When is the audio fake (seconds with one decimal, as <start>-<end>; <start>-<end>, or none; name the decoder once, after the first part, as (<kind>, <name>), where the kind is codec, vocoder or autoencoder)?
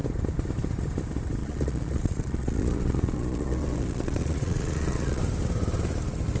1.4-5.2 (vocoder, Vocos)